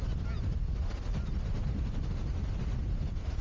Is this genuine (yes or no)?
yes